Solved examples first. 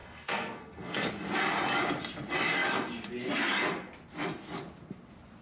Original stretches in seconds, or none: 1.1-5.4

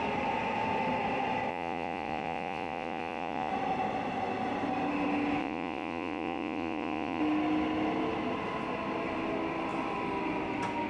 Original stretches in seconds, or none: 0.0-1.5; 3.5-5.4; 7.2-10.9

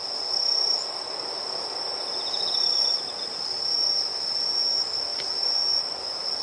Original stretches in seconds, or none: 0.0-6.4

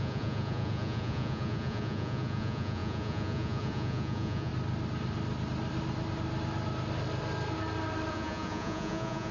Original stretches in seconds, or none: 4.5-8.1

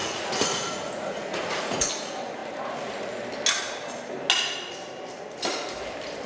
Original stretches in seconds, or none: 1.9-6.3